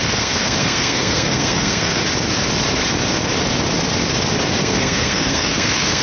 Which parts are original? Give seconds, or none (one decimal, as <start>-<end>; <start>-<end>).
2.0-4.6